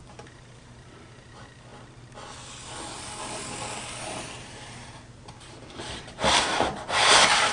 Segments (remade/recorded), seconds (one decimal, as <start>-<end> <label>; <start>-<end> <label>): 0.0-1.7 remade; 1.7-4.3 recorded; 4.3-7.5 remade

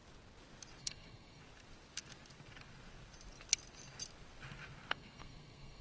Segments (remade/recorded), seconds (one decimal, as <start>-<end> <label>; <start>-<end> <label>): 0.0-0.8 recorded; 0.8-1.4 remade; 1.4-4.9 recorded; 4.9-5.8 remade

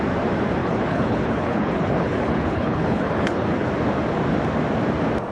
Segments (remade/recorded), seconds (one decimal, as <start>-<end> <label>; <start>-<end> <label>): 0.0-0.6 recorded; 0.6-3.7 remade; 3.7-5.3 recorded